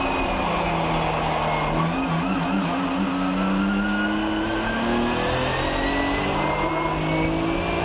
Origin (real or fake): real